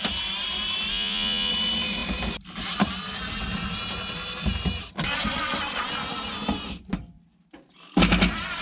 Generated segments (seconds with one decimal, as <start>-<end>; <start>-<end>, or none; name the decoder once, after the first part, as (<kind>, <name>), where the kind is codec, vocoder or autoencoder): 0.9-1.5 (vocoder, Vocos)

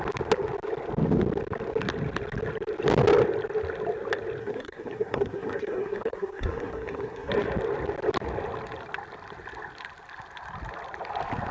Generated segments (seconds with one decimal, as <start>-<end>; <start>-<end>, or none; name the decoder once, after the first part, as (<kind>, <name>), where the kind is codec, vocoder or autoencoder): 4.4-7.3 (codec, SNAC)

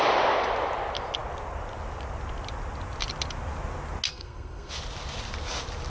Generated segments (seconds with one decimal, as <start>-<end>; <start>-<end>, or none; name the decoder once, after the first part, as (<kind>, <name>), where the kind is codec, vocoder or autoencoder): 4.1-4.7 (codec, SNAC)

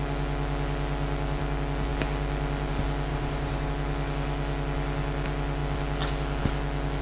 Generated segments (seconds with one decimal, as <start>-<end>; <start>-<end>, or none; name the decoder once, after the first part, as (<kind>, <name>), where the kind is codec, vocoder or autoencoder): 3.1-3.7 (vocoder, BigVGAN v2)